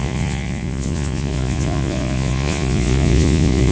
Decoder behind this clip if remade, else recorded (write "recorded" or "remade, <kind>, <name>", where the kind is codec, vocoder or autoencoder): remade, vocoder, Vocos